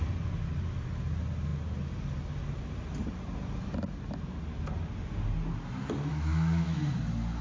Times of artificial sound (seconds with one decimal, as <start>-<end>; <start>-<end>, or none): 6.1-6.8

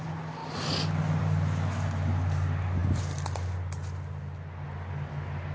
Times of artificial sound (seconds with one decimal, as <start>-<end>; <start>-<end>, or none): none